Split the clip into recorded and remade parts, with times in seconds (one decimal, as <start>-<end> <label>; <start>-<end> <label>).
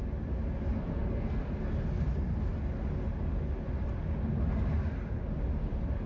0.0-0.7 recorded; 0.7-1.4 remade; 1.4-6.1 recorded